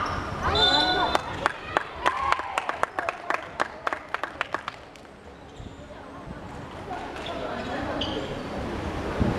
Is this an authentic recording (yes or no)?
no